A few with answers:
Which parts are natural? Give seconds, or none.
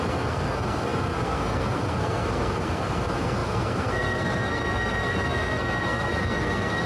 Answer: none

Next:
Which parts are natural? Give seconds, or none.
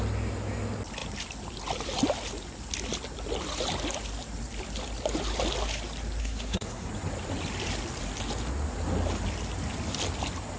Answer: 0.0-6.2; 6.9-10.6